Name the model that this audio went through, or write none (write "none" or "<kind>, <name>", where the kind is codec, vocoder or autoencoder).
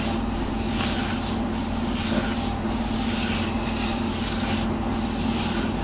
none